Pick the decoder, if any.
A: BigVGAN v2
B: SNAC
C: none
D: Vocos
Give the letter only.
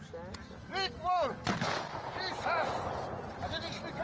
C